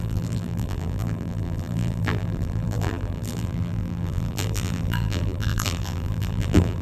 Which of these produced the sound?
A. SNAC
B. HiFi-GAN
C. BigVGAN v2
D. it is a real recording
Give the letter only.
C